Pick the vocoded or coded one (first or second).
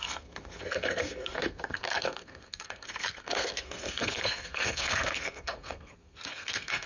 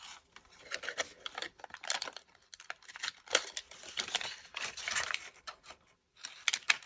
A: first